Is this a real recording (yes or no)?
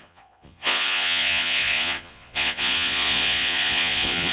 no